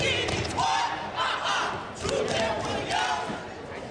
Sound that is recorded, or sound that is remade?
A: recorded